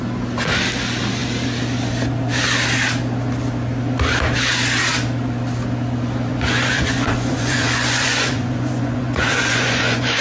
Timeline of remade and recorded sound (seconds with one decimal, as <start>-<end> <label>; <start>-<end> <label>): 0.0-6.3 recorded; 6.3-10.2 remade